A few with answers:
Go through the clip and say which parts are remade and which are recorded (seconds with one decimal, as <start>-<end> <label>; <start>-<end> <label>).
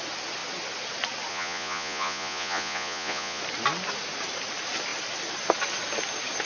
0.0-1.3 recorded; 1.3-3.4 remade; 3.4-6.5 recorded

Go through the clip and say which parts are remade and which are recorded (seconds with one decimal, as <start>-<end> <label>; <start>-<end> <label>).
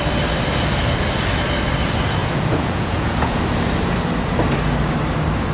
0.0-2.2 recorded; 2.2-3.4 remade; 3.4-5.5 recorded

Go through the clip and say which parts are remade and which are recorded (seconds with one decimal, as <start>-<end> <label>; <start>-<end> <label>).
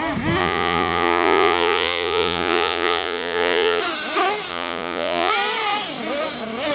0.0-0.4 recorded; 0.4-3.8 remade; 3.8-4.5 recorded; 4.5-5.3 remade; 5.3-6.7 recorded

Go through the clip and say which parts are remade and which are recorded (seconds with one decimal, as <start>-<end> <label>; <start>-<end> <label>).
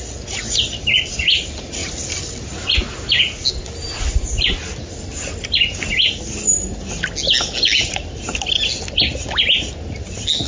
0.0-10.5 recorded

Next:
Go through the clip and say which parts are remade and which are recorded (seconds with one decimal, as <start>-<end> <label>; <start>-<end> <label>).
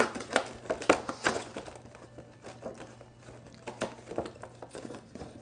0.0-0.4 remade; 0.4-1.1 recorded; 1.1-1.5 remade; 1.5-4.7 recorded; 4.7-5.4 remade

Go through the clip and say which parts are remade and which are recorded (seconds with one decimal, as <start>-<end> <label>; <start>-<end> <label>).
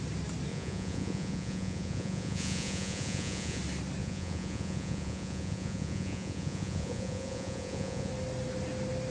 0.0-0.5 recorded; 0.5-3.6 remade; 3.6-4.0 recorded; 4.0-8.1 remade; 8.1-9.1 recorded